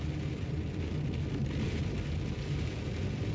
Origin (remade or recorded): recorded